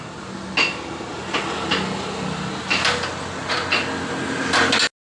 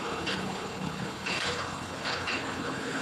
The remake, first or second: second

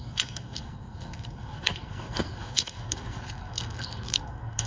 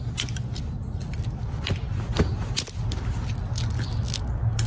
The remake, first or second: first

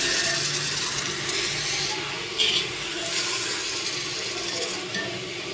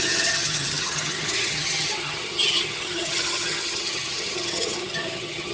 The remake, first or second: second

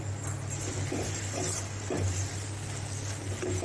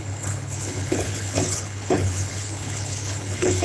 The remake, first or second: second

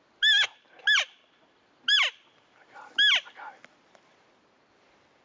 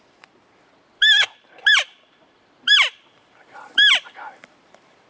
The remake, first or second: second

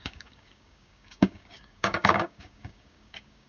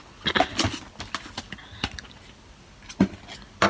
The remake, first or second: first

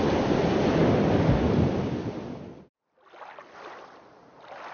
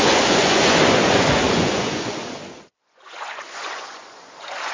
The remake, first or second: second